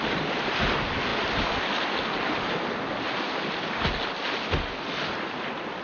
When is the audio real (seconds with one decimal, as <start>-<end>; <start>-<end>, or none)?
0.0-5.8